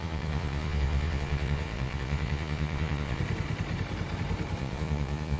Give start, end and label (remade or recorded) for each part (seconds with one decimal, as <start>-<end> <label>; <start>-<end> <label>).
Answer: 0.0-3.2 remade; 3.2-4.6 recorded; 4.6-5.4 remade